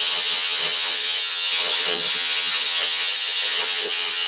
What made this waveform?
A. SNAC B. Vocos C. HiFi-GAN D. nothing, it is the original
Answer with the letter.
C